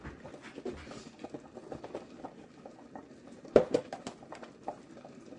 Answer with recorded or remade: recorded